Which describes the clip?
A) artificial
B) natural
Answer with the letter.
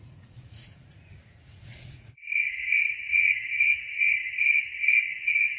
A